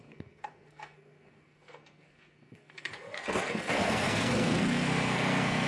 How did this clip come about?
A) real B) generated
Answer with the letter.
B